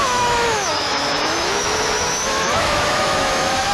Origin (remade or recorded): remade